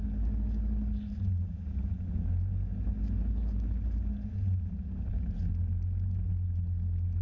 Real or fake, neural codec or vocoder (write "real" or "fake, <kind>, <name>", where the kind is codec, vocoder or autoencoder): real